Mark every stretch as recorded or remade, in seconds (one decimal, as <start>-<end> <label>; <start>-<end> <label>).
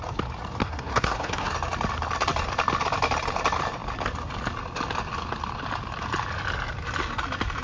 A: 0.0-0.6 recorded; 0.6-1.5 remade; 1.5-7.6 recorded